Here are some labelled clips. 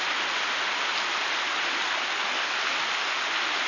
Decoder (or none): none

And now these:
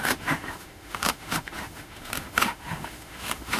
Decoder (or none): autoencoder, DAC-VAE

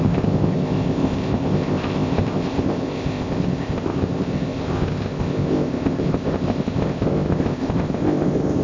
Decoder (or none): codec, ZipCodec